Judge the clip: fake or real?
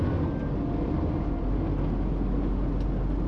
real